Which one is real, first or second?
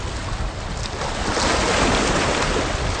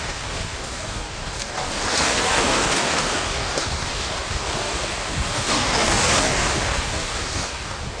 first